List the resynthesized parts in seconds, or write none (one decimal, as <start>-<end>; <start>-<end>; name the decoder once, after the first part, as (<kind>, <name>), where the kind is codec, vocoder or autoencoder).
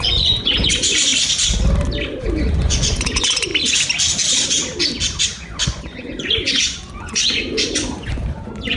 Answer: 0.0-1.1 (vocoder, Vocos); 2.2-3.5; 5.2-8.8